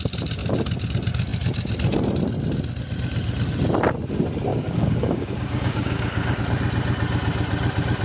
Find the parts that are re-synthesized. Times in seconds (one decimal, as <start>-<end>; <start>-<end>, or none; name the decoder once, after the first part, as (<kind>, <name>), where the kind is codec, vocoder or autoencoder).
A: 4.5-6.4 (codec, DAC)